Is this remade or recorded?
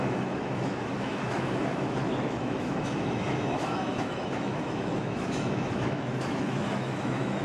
remade